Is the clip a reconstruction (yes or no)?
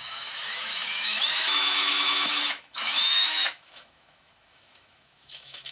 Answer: yes